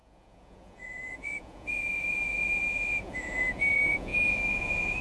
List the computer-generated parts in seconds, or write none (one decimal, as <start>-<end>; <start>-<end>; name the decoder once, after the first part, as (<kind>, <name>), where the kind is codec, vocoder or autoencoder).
0.0-5.0 (vocoder, Vocos)